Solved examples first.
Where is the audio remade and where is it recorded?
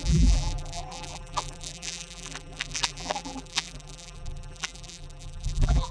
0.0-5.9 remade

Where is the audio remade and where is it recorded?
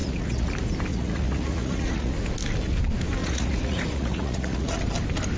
0.0-0.5 remade; 0.5-0.9 recorded; 0.9-2.1 remade; 2.1-3.2 recorded; 3.2-4.8 remade; 4.8-5.4 recorded